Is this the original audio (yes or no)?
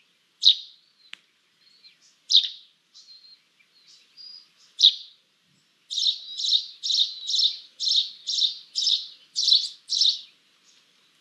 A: yes